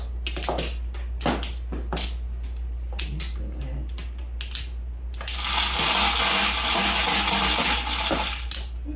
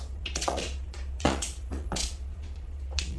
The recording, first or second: first